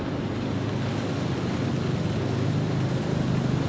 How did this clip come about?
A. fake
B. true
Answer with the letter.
B